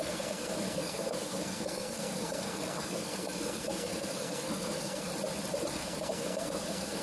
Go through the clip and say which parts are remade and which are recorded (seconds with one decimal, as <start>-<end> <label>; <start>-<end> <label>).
0.0-5.1 remade; 5.1-5.7 recorded; 5.7-7.0 remade